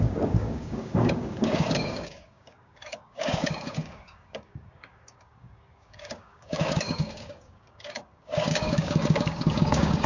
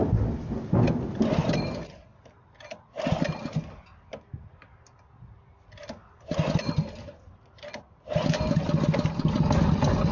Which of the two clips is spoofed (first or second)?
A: first